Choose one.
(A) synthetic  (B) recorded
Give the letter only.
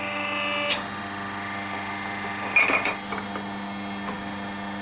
B